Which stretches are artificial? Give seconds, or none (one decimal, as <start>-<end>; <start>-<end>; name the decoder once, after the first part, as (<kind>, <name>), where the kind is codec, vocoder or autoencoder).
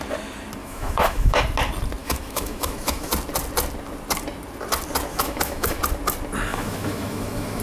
0.6-1.4 (autoencoder, DAC-VAE); 2.0-3.1; 5.1-5.8; 6.5-7.6